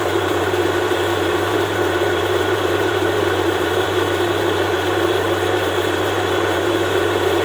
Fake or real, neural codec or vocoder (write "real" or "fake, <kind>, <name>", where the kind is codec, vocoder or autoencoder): fake, vocoder, BigVGAN v2